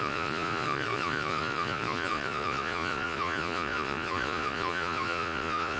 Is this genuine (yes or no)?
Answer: no